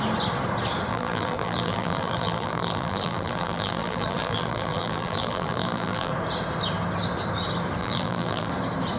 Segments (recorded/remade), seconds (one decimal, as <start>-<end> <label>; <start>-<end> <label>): 0.0-0.9 recorded; 0.9-6.1 remade; 6.1-7.8 recorded; 7.8-8.5 remade; 8.5-9.0 recorded